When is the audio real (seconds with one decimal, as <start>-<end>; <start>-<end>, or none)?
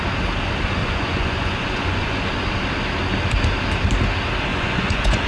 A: 0.0-0.8; 2.3-4.5